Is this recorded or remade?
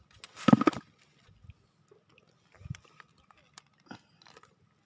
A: recorded